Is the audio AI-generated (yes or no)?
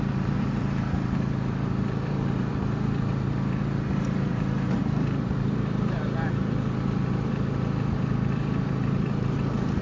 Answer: yes